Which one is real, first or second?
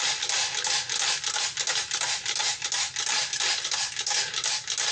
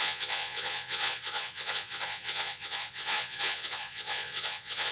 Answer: first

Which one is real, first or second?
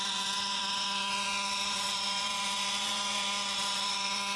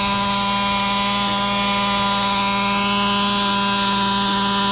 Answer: second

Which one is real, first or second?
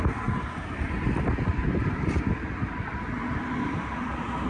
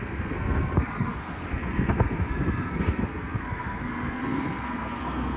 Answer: first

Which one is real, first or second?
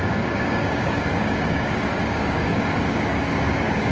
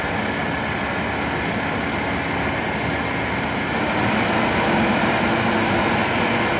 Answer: second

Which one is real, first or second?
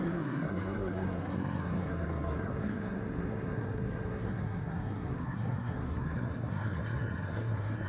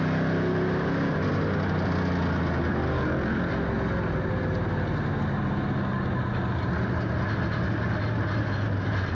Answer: second